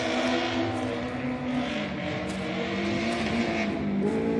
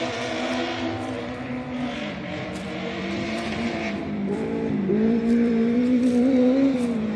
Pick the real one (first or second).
first